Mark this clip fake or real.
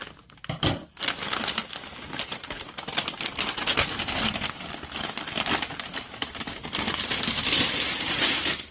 real